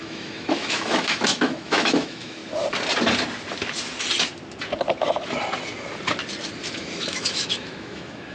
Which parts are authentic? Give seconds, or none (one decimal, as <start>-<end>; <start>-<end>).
2.4-6.8